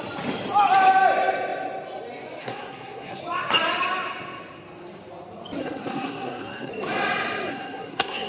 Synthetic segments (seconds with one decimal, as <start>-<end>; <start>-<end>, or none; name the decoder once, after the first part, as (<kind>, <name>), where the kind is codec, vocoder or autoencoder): 2.4-3.2 (codec, SNAC); 5.6-6.7; 7.5-8.3